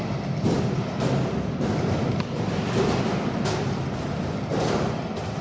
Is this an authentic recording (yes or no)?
yes